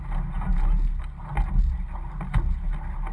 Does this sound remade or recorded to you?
recorded